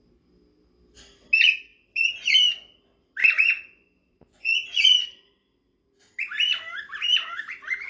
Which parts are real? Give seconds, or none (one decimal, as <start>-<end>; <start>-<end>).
0.0-3.2; 5.3-7.9